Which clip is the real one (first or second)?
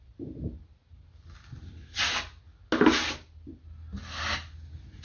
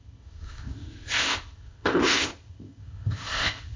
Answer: first